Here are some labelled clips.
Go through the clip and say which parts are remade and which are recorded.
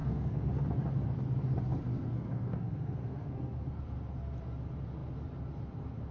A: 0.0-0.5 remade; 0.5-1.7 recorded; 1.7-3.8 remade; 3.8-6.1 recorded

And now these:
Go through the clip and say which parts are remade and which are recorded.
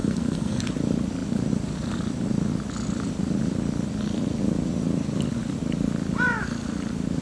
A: 0.0-0.6 remade; 0.6-7.2 recorded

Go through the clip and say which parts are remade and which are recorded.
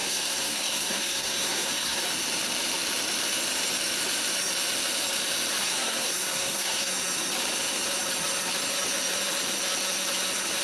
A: 0.0-2.0 remade; 2.0-5.6 recorded; 5.6-6.9 remade; 6.9-10.6 recorded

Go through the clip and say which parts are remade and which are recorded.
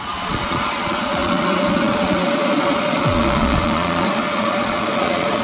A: 0.0-5.4 remade